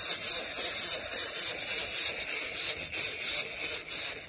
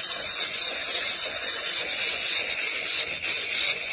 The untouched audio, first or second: first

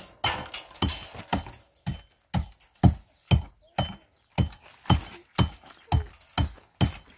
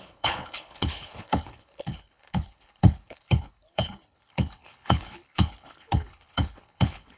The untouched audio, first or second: first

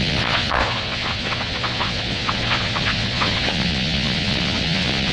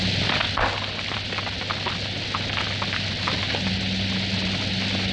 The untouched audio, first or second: second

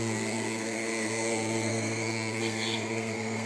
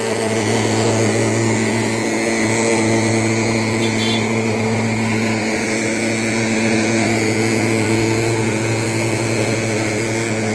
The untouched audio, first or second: second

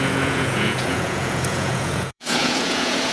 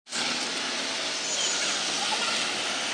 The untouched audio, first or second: second